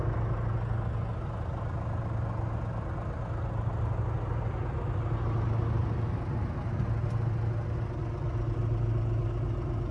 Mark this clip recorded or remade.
recorded